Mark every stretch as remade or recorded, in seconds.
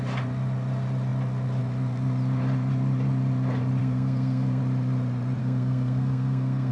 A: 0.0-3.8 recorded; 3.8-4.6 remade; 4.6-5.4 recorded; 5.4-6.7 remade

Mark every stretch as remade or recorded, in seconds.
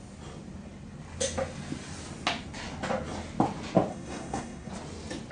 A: 0.0-3.9 recorded; 3.9-4.7 remade; 4.7-5.3 recorded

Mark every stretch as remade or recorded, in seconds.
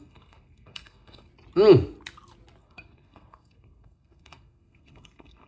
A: 0.0-1.3 remade; 1.3-2.6 recorded; 2.6-5.5 remade